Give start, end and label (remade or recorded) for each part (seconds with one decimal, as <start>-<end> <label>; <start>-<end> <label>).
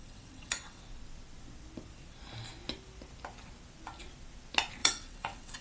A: 0.0-0.8 remade; 0.8-4.8 recorded; 4.8-5.6 remade